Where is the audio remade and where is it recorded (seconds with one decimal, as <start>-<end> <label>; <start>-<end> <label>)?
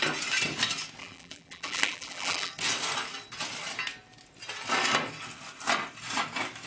0.0-1.0 recorded; 1.0-2.5 remade; 2.5-6.7 recorded